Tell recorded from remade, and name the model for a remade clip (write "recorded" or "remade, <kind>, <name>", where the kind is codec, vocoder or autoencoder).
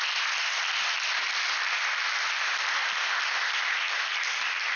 recorded